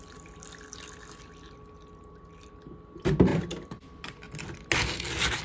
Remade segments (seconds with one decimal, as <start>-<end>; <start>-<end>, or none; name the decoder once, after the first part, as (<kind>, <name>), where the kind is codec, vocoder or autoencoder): none

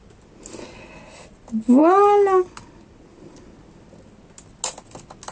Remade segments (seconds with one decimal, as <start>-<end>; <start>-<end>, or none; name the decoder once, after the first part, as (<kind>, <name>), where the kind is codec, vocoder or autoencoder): none

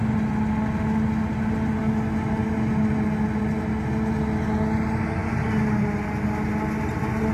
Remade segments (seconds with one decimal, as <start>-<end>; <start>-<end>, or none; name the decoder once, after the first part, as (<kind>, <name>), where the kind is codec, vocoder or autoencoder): none

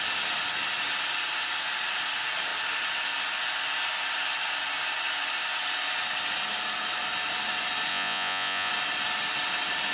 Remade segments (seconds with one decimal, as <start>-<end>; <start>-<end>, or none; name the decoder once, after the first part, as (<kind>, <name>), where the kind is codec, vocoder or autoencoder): 7.9-8.7 (vocoder, Vocos)

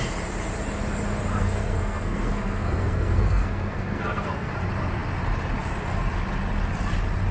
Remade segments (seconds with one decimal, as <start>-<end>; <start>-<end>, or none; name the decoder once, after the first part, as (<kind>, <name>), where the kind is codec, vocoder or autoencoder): 1.3-4.5 (codec, SNAC)

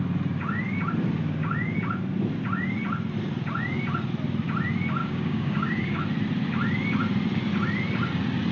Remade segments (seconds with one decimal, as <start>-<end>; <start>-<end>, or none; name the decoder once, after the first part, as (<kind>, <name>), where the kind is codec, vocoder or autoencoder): 5.0-6.0 (codec, DAC)

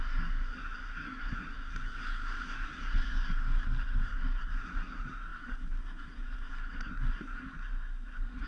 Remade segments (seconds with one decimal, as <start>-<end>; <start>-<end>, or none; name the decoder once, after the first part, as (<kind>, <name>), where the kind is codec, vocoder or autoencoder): 0.0-8.5 (codec, SNAC)